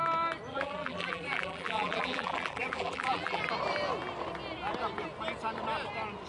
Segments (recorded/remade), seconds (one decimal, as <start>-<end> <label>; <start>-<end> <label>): 0.0-0.5 recorded; 0.5-3.4 remade; 3.4-6.3 recorded